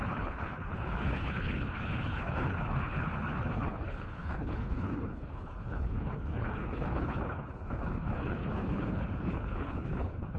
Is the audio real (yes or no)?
no